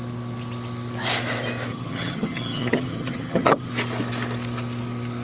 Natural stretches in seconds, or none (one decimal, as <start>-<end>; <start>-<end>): 0.0-1.7; 3.7-5.2